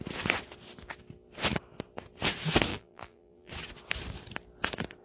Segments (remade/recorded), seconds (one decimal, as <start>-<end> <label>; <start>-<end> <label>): 0.0-2.7 recorded; 2.7-3.5 remade; 3.5-5.0 recorded